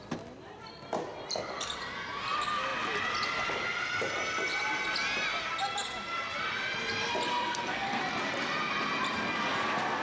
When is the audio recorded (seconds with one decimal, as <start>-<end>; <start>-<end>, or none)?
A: 0.0-7.3; 8.0-10.0